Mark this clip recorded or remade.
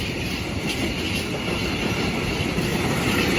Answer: recorded